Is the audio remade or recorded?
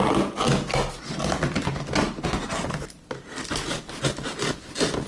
recorded